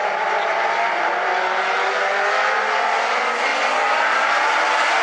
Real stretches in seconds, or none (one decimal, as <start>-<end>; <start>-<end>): 0.0-5.0